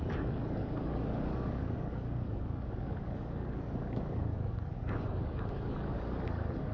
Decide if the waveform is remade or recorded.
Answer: remade